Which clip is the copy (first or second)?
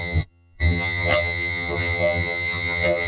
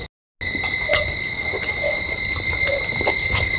first